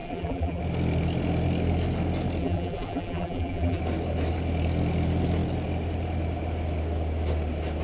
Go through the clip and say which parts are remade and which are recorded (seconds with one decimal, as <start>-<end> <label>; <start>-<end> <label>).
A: 0.0-0.6 remade; 0.6-2.4 recorded; 2.4-3.8 remade; 3.8-7.8 recorded